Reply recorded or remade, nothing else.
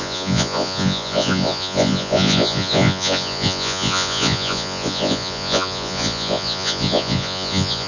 remade